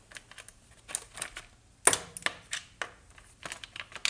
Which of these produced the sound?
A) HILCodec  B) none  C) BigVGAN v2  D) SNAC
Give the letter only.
B